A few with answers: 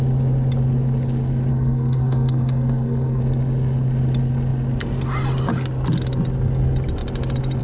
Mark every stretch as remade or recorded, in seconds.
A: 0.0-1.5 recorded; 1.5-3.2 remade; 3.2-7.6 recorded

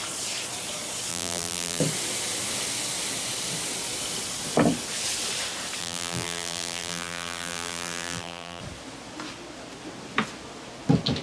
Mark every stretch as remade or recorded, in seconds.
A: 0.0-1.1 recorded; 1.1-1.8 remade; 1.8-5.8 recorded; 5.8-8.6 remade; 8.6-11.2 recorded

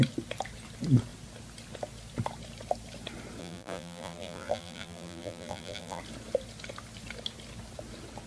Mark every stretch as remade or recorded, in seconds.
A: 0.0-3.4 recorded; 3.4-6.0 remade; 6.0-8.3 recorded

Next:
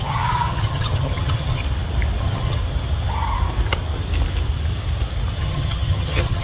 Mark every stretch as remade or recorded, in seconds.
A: 0.0-1.6 remade; 1.6-2.2 recorded; 2.2-2.6 remade; 2.6-5.4 recorded; 5.4-6.4 remade

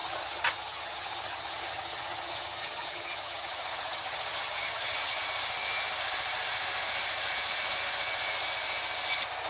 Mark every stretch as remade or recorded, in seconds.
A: 0.0-5.2 remade; 5.2-9.5 recorded

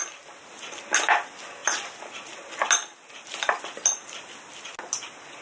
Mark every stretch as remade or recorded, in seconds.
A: 0.0-5.4 recorded